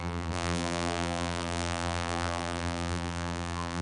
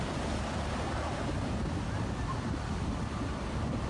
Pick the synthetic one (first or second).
first